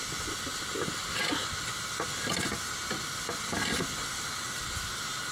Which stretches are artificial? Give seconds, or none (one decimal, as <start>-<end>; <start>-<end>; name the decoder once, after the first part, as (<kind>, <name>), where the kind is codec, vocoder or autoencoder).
none